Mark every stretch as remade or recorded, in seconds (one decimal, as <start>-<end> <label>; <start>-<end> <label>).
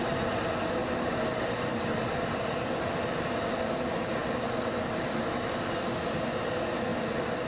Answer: 0.0-7.5 recorded